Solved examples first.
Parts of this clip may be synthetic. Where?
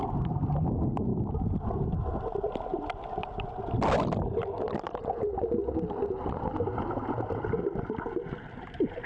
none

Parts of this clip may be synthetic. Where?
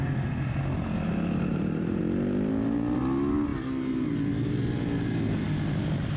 1.5-2.0 (vocoder, BigVGAN v2)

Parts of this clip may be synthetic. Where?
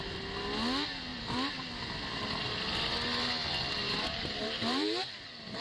1.1-1.7 (vocoder, BigVGAN v2); 3.8-5.1